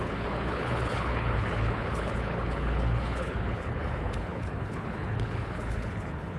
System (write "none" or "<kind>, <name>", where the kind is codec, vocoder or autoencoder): codec, HILCodec